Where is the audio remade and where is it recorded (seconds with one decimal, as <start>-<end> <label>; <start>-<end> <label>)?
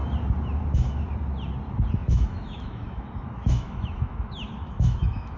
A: 0.0-2.0 recorded; 2.0-5.4 remade